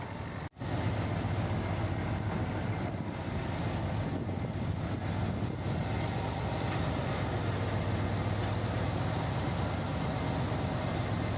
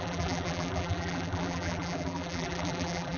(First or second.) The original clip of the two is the first